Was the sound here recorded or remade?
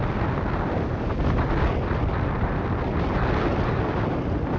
recorded